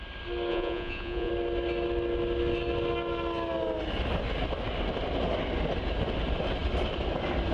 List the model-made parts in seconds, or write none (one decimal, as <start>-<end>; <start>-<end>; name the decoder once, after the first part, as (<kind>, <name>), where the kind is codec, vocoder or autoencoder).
0.5-1.3 (vocoder, Vocos)

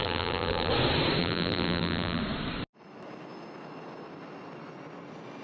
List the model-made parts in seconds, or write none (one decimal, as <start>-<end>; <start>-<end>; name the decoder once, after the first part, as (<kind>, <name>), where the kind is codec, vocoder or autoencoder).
0.0-0.7 (vocoder, BigVGAN v2); 1.2-2.2

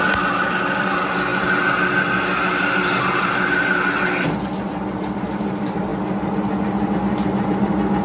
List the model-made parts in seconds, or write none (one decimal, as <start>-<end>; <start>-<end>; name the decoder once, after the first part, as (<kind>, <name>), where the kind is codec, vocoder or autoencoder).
none

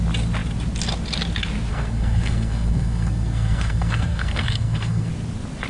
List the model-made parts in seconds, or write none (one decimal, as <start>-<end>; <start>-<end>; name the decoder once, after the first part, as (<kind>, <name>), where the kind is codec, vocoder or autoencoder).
1.7-5.1 (codec, SNAC)

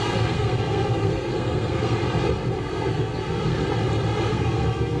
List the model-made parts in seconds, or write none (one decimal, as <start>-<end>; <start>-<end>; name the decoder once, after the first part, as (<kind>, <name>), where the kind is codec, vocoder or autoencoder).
0.0-2.0 (codec, SNAC); 2.6-3.6; 4.3-5.0

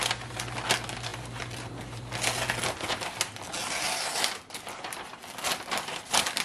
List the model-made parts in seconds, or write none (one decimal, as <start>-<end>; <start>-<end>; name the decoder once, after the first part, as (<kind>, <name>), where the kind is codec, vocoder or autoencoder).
none

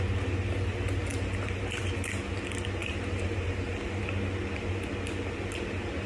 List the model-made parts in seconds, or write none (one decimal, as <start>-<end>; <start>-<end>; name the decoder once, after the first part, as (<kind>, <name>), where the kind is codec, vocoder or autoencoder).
1.1-1.8 (vocoder, BigVGAN v2); 2.8-4.0

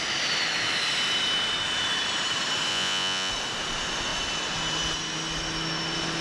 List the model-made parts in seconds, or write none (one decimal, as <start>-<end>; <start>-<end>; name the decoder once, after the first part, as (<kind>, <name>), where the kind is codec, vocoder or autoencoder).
2.7-3.3 (vocoder, Vocos)